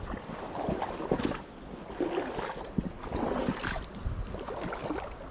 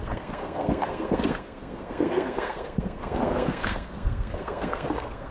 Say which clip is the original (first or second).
first